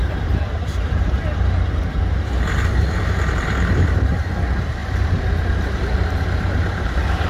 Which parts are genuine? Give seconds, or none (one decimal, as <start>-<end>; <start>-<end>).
4.3-4.8